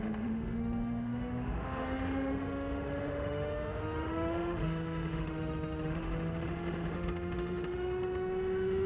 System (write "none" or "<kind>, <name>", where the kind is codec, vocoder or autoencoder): autoencoder, DAC-VAE